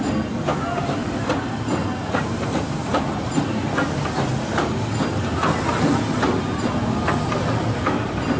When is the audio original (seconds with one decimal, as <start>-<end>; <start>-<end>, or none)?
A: 0.0-1.0; 3.4-8.4